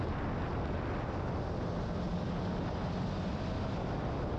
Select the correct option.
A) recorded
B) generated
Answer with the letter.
A